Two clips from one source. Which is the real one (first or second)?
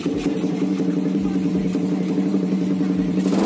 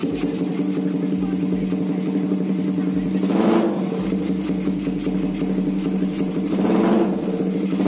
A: second